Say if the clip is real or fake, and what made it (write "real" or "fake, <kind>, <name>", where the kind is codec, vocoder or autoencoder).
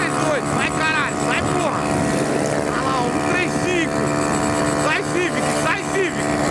real